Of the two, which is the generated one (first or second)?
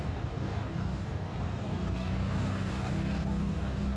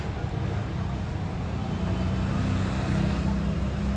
first